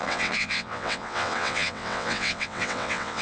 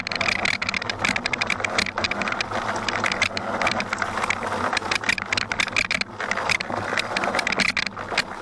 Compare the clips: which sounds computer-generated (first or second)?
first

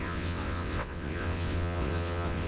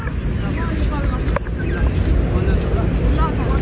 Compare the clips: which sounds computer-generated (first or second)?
first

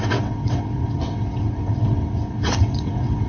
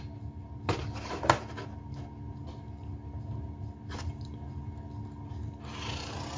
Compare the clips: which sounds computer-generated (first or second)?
first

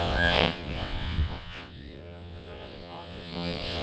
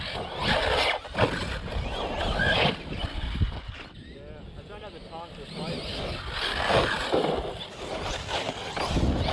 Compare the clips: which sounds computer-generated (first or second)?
first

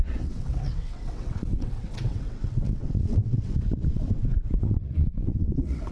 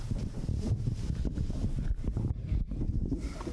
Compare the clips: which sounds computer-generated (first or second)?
first